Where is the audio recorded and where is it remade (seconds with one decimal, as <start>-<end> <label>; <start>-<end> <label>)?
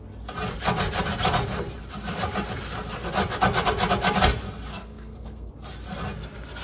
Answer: 0.0-4.7 recorded; 4.7-5.5 remade; 5.5-6.6 recorded